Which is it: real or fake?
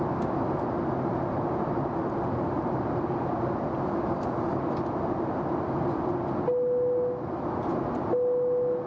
real